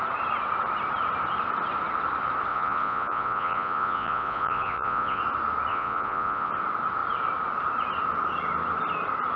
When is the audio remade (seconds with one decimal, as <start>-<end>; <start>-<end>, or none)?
2.5-5.2; 5.7-6.5